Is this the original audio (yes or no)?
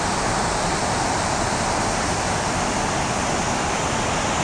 yes